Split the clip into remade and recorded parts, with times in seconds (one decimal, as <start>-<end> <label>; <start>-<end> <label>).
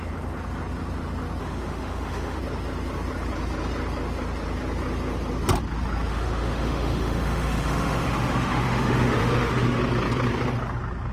0.0-1.4 recorded; 1.4-2.4 remade; 2.4-6.1 recorded; 6.1-9.8 remade; 9.8-11.1 recorded